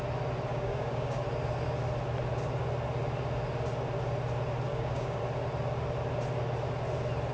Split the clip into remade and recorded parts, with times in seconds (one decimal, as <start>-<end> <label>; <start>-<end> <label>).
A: 0.0-0.5 recorded; 0.5-1.2 remade; 1.2-4.7 recorded; 4.7-5.2 remade; 5.2-7.3 recorded

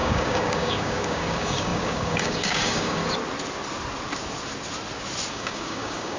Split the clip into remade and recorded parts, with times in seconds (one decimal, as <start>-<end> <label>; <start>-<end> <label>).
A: 0.0-3.0 remade; 3.0-5.3 recorded; 5.3-6.2 remade

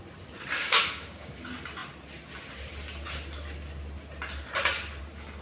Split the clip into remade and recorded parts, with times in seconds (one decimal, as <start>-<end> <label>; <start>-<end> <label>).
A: 0.0-0.6 recorded; 0.6-1.3 remade; 1.3-5.4 recorded

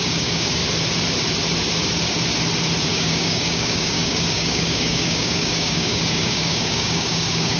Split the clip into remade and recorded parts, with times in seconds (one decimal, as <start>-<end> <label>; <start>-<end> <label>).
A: 0.0-0.6 remade; 0.6-2.9 recorded; 2.9-7.6 remade